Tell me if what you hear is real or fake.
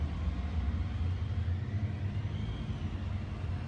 real